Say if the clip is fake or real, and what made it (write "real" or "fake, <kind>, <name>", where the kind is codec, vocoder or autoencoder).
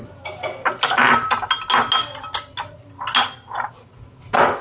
real